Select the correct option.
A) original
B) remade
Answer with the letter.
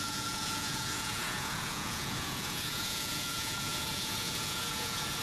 B